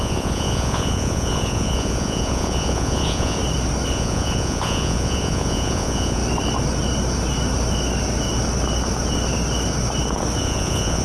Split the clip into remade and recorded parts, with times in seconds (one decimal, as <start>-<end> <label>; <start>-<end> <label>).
0.0-3.4 remade; 3.4-3.9 recorded; 3.9-6.2 remade; 6.2-10.4 recorded; 10.4-11.0 remade